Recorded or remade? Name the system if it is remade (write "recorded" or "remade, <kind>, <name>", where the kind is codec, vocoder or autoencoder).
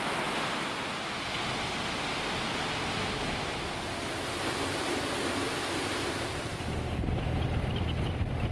recorded